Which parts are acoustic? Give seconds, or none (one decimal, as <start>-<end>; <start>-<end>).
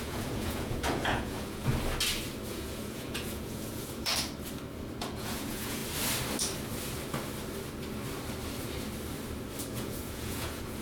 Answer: 1.7-2.5; 4.1-5.0; 5.8-9.6